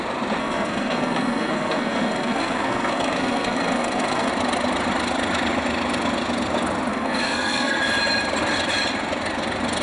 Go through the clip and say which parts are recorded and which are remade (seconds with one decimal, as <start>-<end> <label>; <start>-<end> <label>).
0.0-0.4 recorded; 0.4-4.3 remade; 4.3-6.9 recorded; 6.9-7.8 remade; 7.8-9.8 recorded